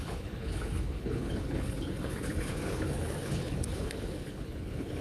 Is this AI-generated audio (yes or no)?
yes